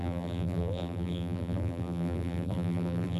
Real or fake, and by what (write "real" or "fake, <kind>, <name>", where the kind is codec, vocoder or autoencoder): fake, vocoder, BigVGAN v2